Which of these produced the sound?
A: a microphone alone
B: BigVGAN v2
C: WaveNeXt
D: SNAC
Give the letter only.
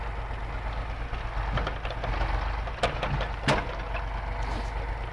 A